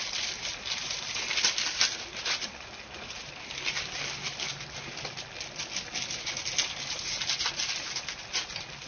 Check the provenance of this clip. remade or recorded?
recorded